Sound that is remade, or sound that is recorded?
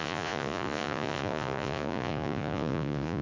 remade